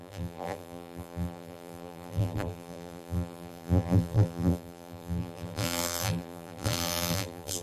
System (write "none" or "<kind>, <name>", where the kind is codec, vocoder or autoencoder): vocoder, BigVGAN v2